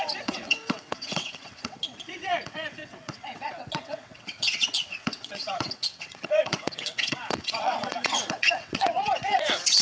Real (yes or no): no